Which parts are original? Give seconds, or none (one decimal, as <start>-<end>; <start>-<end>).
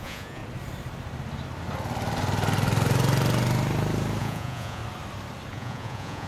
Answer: 0.4-4.2; 4.8-5.5